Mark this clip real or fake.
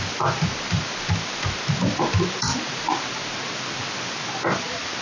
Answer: real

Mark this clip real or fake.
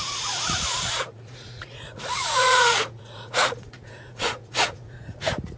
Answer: fake